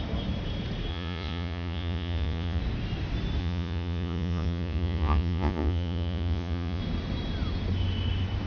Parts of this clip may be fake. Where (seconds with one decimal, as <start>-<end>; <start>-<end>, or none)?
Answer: 0.9-2.6; 3.4-6.8

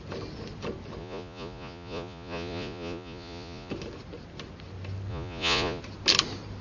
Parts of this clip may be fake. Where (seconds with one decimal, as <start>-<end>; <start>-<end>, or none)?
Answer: 1.0-3.7; 5.1-5.8

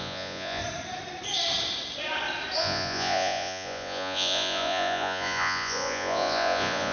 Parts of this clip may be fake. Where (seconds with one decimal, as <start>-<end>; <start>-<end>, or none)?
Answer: 0.0-0.6; 2.6-6.9